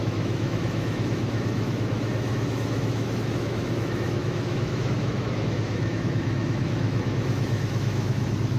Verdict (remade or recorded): remade